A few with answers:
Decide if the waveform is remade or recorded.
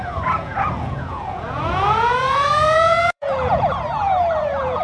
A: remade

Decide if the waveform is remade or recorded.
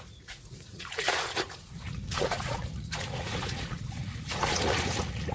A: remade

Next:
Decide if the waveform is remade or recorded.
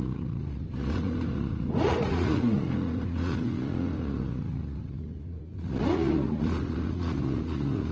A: remade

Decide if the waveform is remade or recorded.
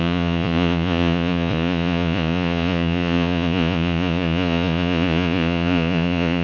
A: remade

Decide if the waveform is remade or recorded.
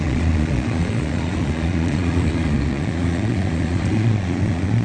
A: remade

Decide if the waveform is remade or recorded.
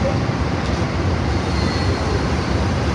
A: recorded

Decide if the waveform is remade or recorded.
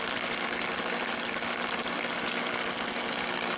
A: recorded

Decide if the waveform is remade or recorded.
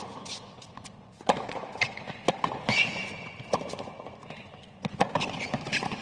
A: remade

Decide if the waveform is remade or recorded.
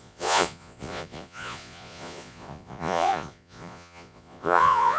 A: remade